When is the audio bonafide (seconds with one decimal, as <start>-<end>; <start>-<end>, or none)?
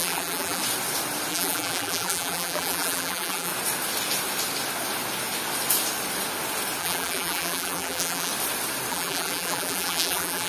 0.6-1.3; 3.5-6.8; 8.3-8.9